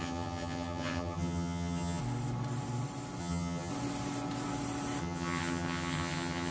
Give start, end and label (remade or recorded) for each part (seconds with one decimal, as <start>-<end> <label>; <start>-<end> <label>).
0.0-2.0 remade; 2.0-3.2 recorded; 3.2-3.7 remade; 3.7-5.0 recorded; 5.0-6.5 remade